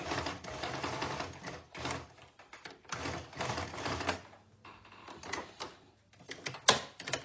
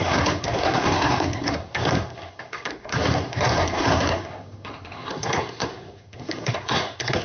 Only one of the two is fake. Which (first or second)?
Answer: second